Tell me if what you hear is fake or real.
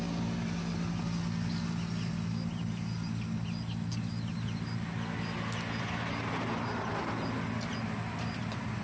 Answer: real